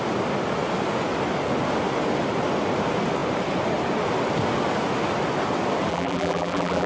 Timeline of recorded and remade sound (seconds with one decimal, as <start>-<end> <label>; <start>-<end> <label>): 0.0-5.9 recorded; 5.9-6.9 remade